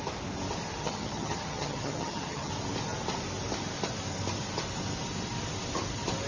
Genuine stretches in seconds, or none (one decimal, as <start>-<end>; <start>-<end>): 0.0-0.8; 2.5-6.3

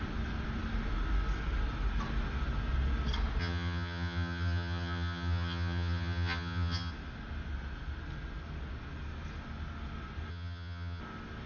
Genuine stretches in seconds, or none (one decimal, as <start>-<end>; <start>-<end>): 0.0-3.4; 6.9-10.3; 11.0-11.5